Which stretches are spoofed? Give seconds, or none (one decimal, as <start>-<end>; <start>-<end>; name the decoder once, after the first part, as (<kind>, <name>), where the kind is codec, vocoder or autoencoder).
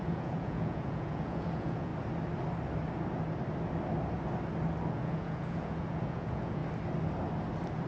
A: 0.0-1.9 (vocoder, Vocos); 4.9-6.6